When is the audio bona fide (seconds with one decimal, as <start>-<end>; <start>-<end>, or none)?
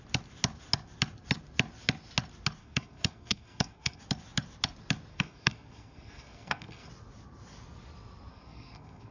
0.0-2.6; 4.0-5.1; 6.9-8.3